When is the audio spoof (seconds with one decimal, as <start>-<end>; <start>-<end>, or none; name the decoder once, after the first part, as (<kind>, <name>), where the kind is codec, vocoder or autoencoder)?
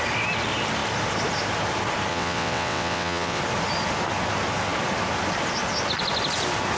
2.1-3.4 (vocoder, WaveNeXt)